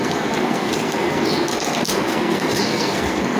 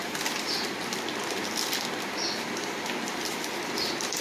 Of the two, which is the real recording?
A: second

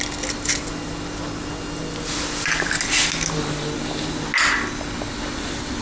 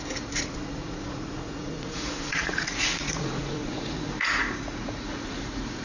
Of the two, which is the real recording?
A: first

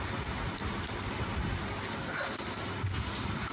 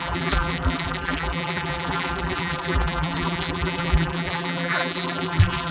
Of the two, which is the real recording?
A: first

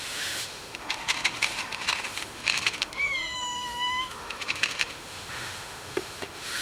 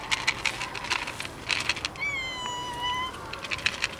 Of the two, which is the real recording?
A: second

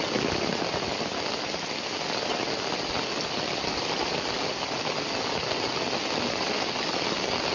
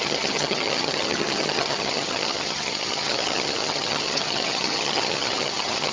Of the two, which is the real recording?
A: first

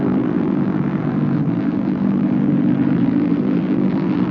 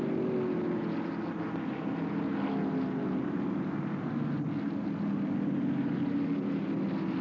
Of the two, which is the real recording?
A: second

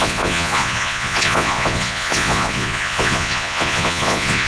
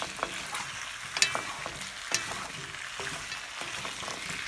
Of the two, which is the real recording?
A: second